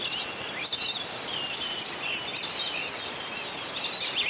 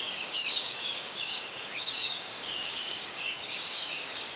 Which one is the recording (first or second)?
first